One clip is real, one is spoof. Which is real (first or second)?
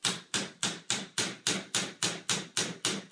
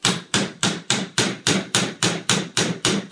first